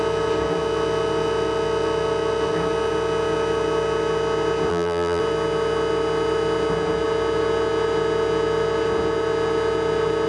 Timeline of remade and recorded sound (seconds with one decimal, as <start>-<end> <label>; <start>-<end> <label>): 0.0-4.7 recorded; 4.7-5.2 remade; 5.2-10.3 recorded